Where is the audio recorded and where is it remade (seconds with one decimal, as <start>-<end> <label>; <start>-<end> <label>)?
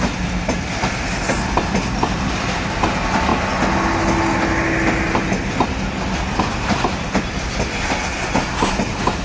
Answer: 0.0-9.2 recorded